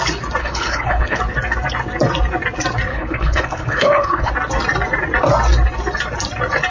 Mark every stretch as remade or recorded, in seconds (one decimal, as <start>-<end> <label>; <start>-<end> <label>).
0.0-0.4 recorded; 0.4-1.2 remade; 1.2-2.9 recorded; 2.9-4.3 remade; 4.3-6.7 recorded